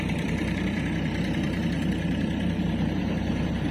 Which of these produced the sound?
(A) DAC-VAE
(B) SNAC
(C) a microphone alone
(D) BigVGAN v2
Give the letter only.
D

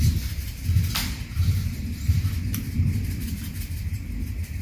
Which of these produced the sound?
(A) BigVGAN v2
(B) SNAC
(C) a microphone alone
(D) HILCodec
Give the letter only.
A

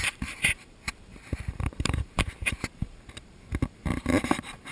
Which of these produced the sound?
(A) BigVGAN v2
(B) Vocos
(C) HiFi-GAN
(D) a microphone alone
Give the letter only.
A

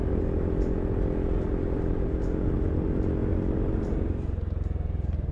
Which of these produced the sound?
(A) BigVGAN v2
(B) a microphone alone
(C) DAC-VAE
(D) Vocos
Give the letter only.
B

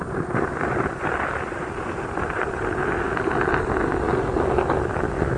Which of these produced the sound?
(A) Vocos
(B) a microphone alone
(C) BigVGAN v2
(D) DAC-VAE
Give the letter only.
C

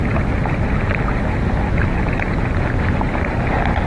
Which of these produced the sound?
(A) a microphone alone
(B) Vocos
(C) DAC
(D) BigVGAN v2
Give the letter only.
A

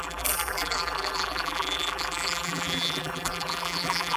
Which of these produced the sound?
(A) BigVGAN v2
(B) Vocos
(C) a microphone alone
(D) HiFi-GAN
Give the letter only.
A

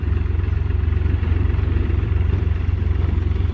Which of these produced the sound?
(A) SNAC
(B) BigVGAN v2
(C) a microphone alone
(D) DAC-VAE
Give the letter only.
B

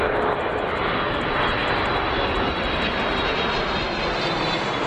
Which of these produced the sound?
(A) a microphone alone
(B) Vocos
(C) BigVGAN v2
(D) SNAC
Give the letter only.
A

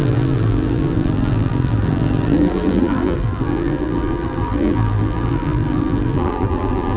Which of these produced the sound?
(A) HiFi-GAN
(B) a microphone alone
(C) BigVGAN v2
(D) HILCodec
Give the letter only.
C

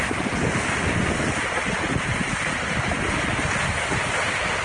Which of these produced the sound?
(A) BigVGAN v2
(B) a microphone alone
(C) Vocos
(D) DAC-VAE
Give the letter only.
B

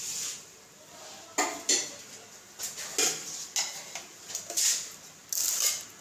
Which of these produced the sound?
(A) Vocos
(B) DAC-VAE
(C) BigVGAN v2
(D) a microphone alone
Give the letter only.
D